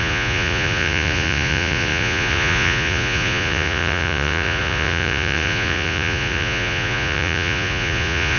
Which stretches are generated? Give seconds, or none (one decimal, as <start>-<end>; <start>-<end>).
0.0-8.4